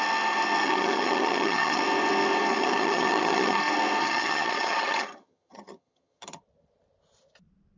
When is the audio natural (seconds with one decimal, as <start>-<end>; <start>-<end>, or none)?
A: 0.0-0.6; 1.8-2.5; 3.6-4.0; 6.4-7.8